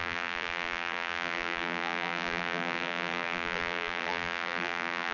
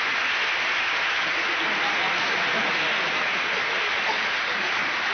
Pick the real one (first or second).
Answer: second